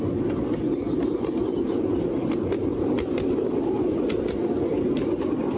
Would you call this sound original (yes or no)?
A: yes